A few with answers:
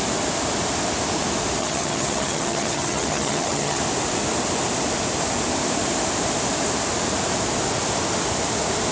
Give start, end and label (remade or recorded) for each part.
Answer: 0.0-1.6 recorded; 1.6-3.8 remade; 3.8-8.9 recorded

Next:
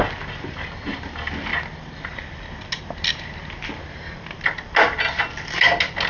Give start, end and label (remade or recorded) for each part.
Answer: 0.0-6.1 recorded

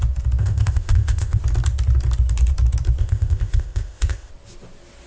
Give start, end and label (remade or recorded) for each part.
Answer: 0.0-0.4 recorded; 0.4-1.4 remade; 1.4-3.0 recorded; 3.0-4.3 remade; 4.3-5.1 recorded

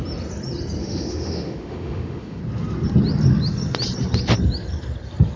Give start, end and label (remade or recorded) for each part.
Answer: 0.0-0.8 recorded; 0.8-2.4 remade; 2.4-5.4 recorded

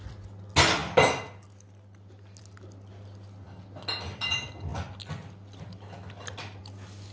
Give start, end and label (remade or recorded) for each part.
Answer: 0.0-7.1 recorded